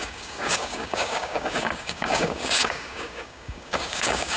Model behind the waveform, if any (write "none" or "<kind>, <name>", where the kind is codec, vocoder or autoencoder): codec, DAC